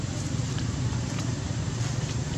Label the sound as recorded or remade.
remade